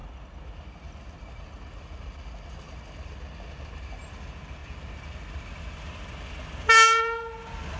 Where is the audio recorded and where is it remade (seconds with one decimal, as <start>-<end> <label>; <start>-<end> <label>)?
0.0-7.8 recorded